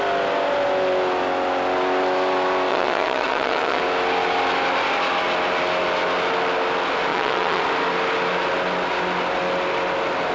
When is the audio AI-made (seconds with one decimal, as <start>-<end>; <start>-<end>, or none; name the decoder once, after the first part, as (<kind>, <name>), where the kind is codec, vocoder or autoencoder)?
2.7-3.8 (vocoder, WaveNeXt); 7.1-7.6